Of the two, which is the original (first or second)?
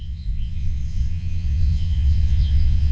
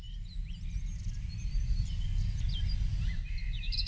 second